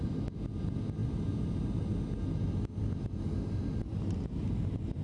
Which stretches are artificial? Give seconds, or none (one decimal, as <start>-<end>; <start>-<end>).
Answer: none